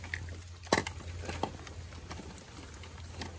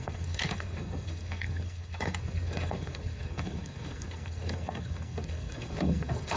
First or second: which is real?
first